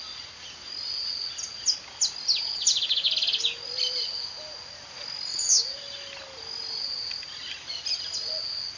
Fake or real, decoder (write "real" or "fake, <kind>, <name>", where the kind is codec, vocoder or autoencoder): real